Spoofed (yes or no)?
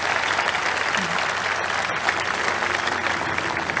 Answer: no